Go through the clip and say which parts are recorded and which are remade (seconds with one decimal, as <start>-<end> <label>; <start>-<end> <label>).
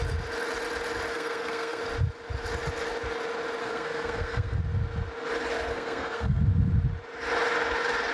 0.0-1.1 recorded; 1.1-1.8 remade; 1.8-3.6 recorded; 3.6-4.6 remade; 4.6-5.7 recorded; 5.7-6.4 remade; 6.4-8.1 recorded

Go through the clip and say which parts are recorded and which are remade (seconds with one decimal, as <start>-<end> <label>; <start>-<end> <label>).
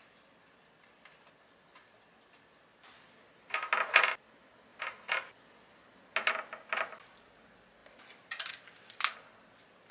0.0-9.9 recorded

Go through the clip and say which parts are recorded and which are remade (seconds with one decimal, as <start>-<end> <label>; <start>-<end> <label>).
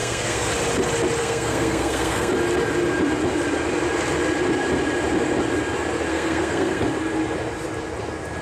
0.0-0.5 remade; 0.5-1.2 recorded; 1.2-2.3 remade; 2.3-6.1 recorded; 6.1-6.8 remade; 6.8-8.4 recorded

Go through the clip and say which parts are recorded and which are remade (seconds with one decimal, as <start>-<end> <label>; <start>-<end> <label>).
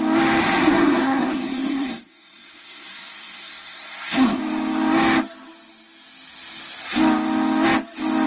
0.0-0.4 recorded; 0.4-4.4 remade; 4.4-8.3 recorded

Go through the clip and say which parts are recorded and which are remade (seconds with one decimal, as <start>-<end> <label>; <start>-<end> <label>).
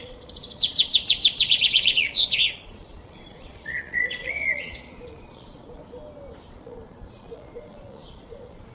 0.0-5.8 remade; 5.8-6.5 recorded; 6.5-8.7 remade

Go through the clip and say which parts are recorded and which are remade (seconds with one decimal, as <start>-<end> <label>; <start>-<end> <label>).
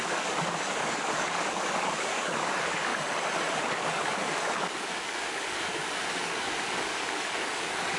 0.0-2.9 remade; 2.9-3.5 recorded; 3.5-8.0 remade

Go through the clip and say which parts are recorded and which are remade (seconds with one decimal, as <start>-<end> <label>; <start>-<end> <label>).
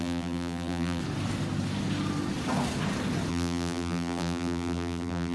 0.0-1.0 remade; 1.0-3.3 recorded; 3.3-5.3 remade